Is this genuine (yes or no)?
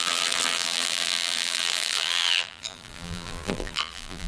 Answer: no